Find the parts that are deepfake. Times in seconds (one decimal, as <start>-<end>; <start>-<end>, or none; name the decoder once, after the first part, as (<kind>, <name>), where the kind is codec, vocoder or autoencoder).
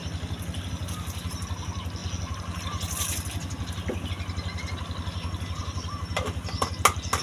none